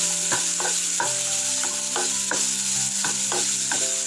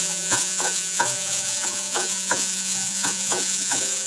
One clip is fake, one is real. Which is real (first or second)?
first